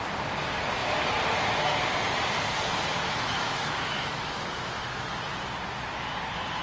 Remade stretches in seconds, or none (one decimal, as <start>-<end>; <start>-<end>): 3.0-5.1